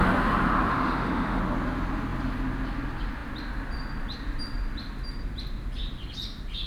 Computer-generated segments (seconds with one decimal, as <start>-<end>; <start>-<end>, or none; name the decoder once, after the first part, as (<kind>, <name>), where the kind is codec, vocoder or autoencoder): 0.7-1.4 (autoencoder, DAC-VAE)

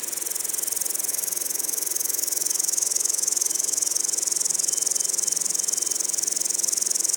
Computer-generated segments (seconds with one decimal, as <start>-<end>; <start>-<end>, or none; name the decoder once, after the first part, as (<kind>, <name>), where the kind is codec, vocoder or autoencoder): 1.1-4.0 (autoencoder, DAC-VAE)